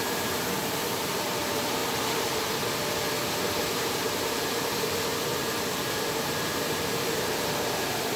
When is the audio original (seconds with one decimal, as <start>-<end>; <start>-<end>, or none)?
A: 1.8-3.7; 5.1-5.7